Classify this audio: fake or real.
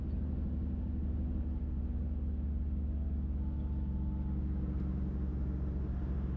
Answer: real